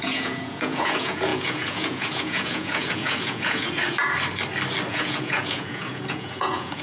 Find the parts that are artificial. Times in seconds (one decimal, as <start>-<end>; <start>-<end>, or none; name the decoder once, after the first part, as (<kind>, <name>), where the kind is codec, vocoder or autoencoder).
0.0-3.8 (vocoder, Vocos); 4.9-6.8